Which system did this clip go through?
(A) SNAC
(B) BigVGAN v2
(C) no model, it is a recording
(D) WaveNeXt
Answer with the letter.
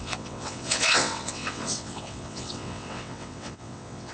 D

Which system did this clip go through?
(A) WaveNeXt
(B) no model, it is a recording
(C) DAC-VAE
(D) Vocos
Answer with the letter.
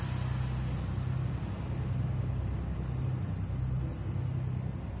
B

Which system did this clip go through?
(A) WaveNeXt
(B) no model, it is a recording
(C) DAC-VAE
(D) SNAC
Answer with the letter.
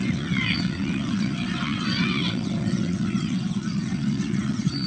A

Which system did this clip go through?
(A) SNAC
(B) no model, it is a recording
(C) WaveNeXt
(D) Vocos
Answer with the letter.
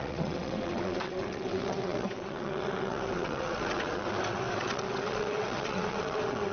C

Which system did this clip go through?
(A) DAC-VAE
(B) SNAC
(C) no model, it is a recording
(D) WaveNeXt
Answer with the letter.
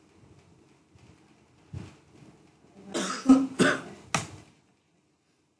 C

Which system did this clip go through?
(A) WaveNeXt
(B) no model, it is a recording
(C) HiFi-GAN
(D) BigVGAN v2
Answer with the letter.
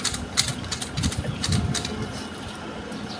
B